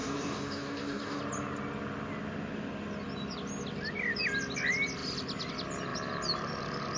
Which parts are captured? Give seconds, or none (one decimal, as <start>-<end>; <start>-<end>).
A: 1.2-7.0